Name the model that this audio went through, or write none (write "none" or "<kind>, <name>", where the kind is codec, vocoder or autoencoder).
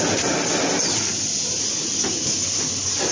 none